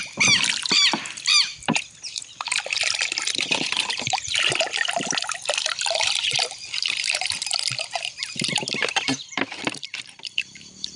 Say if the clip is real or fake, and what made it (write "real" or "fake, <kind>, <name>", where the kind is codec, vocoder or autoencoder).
fake, vocoder, BigVGAN v2